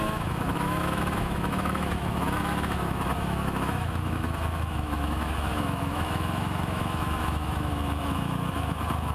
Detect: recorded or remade remade